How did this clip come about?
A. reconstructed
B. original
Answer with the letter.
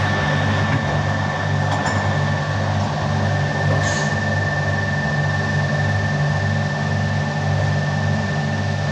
B